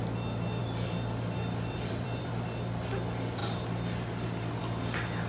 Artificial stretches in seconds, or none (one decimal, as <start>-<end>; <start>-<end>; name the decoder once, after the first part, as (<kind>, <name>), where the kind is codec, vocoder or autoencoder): 0.6-2.3 (vocoder, BigVGAN v2)